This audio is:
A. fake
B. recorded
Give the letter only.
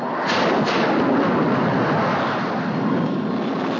B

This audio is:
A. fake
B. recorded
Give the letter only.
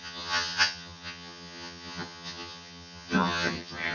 A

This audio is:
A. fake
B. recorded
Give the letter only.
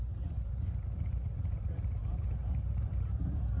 A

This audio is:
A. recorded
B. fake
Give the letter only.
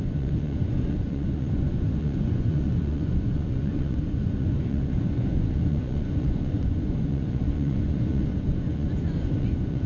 B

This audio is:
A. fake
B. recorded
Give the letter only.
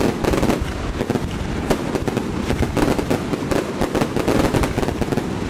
B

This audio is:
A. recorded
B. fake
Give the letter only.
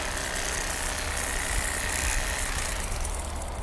A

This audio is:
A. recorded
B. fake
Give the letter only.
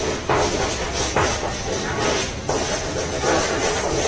A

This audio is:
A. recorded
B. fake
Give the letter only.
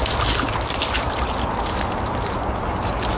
A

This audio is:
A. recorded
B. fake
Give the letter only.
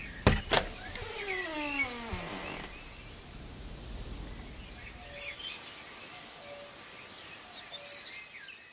A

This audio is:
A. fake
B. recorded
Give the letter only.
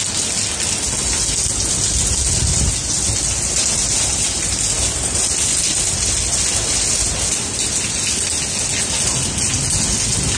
B